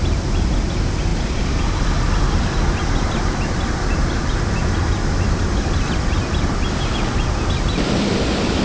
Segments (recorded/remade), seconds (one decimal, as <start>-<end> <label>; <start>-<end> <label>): 0.0-1.1 recorded; 1.1-1.8 remade; 1.8-8.6 recorded